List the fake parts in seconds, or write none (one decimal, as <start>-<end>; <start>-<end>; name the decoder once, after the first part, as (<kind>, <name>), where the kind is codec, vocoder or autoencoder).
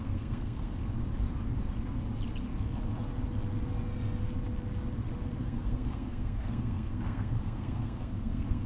0.0-0.8 (codec, SNAC); 5.4-8.7